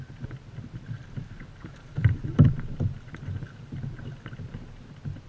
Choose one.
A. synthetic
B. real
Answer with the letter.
B